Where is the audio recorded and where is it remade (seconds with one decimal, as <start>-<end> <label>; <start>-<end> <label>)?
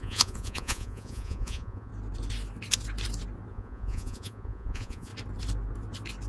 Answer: 0.0-1.9 remade; 1.9-3.5 recorded; 3.5-5.1 remade; 5.1-6.3 recorded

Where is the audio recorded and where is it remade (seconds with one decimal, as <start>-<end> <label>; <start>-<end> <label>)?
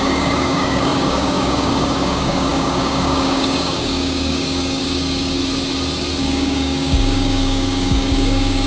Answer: 0.0-5.4 remade; 5.4-6.2 recorded; 6.2-8.7 remade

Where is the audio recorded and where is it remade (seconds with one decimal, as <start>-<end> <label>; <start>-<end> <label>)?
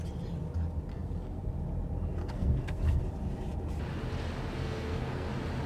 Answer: 0.0-0.9 recorded; 0.9-1.5 remade; 1.5-2.2 recorded; 2.2-3.0 remade; 3.0-4.6 recorded; 4.6-5.3 remade; 5.3-5.7 recorded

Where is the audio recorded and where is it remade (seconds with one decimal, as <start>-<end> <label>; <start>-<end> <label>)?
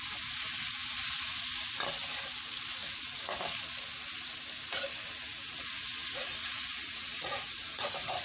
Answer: 0.0-2.8 recorded; 2.8-3.4 remade; 3.4-5.3 recorded; 5.3-8.2 remade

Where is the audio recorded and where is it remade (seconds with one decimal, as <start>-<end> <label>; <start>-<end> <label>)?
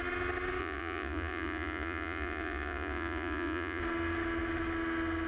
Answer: 0.0-0.6 recorded; 0.6-3.8 remade; 3.8-5.3 recorded